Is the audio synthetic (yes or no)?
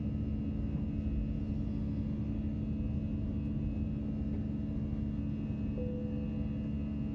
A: no